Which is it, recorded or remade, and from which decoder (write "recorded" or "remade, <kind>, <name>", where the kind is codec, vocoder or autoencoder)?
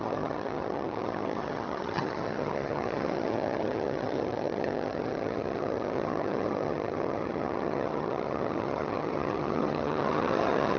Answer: remade, vocoder, HiFi-GAN